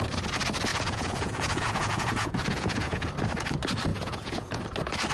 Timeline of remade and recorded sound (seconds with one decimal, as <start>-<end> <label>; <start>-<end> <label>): 0.0-0.7 recorded; 0.7-3.1 remade; 3.1-3.9 recorded; 3.9-4.6 remade; 4.6-5.1 recorded